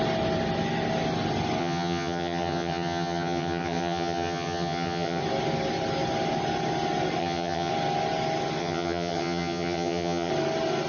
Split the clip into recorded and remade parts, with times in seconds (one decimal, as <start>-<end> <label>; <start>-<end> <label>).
0.0-1.6 recorded; 1.6-5.2 remade; 5.2-7.2 recorded; 7.2-7.7 remade; 7.7-8.6 recorded; 8.6-10.3 remade; 10.3-10.9 recorded